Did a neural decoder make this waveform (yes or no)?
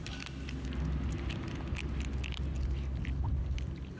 no